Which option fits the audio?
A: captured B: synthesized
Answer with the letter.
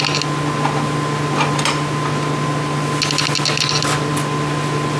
A